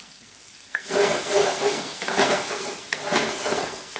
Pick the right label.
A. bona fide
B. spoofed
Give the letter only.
B